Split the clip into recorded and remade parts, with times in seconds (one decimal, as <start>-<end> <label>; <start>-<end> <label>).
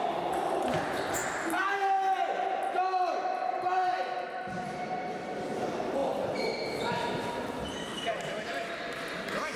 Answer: 0.0-1.2 remade; 1.2-4.2 recorded; 4.2-9.6 remade